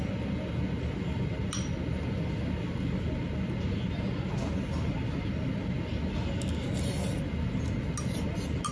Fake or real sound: real